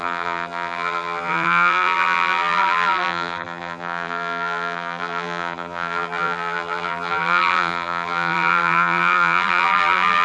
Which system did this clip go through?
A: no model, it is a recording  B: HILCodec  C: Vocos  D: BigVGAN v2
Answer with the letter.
D